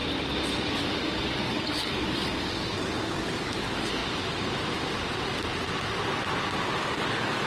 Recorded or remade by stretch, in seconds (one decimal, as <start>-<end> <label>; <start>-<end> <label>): 0.0-0.7 recorded; 0.7-4.0 remade; 4.0-6.8 recorded; 6.8-7.5 remade